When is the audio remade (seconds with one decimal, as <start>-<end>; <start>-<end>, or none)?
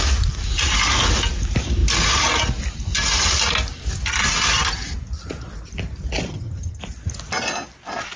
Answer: 6.3-6.8